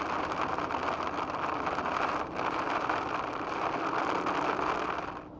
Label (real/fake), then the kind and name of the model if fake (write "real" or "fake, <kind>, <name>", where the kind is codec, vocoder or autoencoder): real